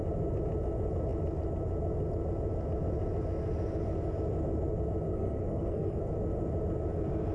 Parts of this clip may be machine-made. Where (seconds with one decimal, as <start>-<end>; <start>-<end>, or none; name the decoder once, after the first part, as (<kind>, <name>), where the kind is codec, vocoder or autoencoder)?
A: 5.1-6.0 (codec, SNAC)